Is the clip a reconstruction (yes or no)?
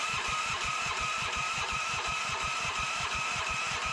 yes